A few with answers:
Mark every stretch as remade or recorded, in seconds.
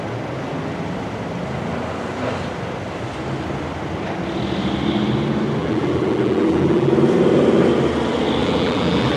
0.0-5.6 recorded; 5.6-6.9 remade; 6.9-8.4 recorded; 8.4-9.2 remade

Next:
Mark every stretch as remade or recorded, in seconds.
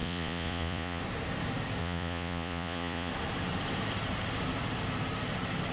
0.0-1.0 remade; 1.0-1.8 recorded; 1.8-3.1 remade; 3.1-5.7 recorded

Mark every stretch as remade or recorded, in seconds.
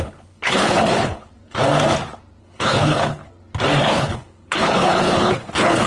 0.0-1.3 remade; 1.3-2.4 recorded; 2.4-3.2 remade; 3.2-3.8 recorded; 3.8-5.9 remade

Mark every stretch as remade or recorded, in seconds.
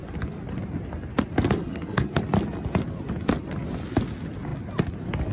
0.0-1.6 recorded; 1.6-2.2 remade; 2.2-5.3 recorded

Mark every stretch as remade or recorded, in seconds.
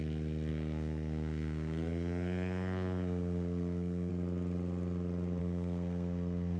0.0-0.5 recorded; 0.5-4.1 remade; 4.1-5.4 recorded; 5.4-6.6 remade